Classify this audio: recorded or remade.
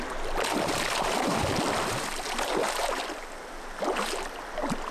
recorded